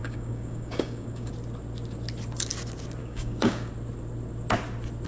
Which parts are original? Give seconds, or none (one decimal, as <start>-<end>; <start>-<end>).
1.3-3.0; 3.7-5.1